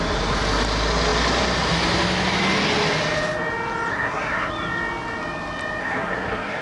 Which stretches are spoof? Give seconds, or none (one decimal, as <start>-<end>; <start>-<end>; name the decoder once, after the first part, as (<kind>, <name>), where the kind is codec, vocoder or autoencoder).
3.9-4.5 (codec, SNAC); 5.8-6.6